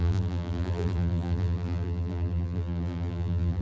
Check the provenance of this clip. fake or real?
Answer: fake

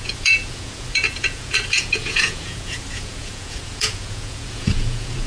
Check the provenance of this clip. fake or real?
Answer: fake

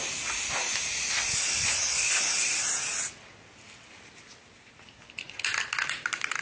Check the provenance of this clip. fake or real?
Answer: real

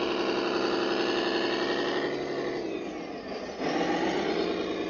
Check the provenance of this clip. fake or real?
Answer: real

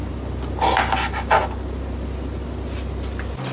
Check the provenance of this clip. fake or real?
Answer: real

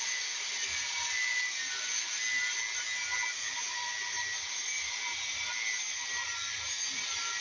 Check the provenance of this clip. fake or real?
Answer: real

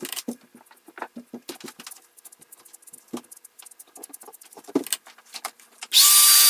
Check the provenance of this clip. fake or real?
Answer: real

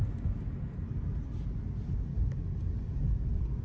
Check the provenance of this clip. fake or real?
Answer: real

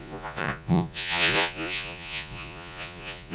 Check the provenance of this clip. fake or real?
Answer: fake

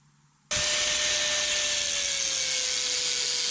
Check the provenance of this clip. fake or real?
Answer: real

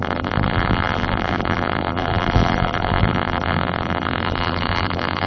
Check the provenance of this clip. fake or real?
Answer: fake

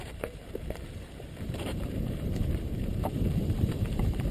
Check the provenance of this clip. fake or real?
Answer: fake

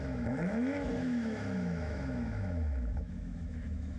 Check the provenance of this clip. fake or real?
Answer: fake